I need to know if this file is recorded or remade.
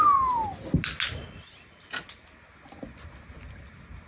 recorded